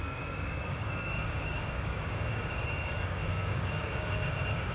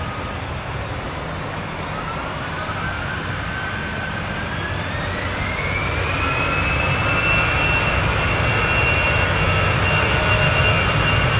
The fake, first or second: first